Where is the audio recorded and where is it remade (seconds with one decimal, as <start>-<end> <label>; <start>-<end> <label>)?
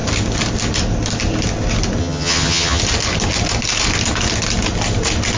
0.0-2.0 recorded; 2.0-2.8 remade; 2.8-5.4 recorded